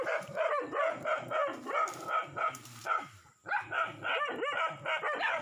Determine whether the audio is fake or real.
real